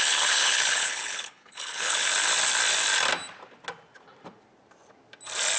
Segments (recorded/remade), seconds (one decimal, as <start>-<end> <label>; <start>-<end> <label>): 0.0-2.0 remade; 2.0-5.6 recorded